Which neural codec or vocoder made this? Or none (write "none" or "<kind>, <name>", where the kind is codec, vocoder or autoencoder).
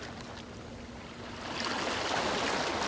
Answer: none